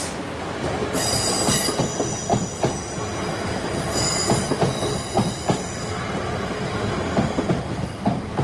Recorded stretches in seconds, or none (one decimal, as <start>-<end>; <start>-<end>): 0.0-8.4